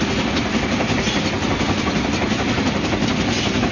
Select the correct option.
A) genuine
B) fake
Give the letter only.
A